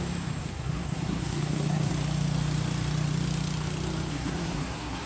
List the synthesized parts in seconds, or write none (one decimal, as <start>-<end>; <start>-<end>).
0.4-1.9; 4.1-5.1